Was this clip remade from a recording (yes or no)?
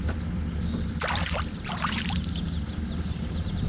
yes